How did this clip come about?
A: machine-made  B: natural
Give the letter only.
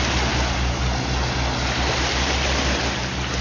B